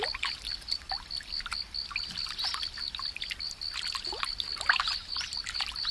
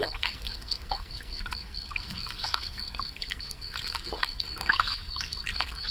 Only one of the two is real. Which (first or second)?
first